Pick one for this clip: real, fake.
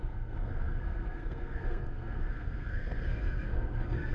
fake